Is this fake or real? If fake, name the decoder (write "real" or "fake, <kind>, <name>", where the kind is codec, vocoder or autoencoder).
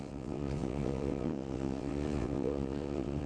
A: fake, vocoder, WaveNeXt